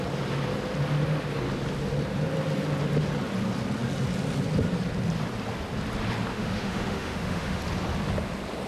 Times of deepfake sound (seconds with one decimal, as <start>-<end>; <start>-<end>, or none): 6.3-7.6